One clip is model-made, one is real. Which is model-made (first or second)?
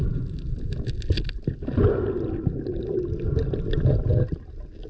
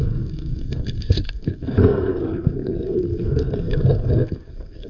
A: second